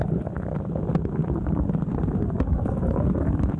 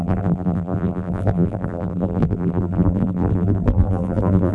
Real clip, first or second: first